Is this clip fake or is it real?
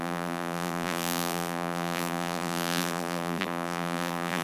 fake